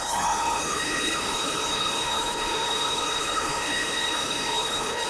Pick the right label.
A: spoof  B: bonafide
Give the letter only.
A